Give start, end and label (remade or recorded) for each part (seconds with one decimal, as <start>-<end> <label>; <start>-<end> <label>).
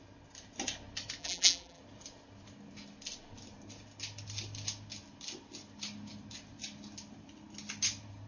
0.0-1.2 recorded; 1.2-1.8 remade; 1.8-8.3 recorded